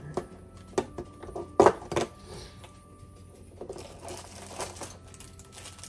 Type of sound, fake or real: real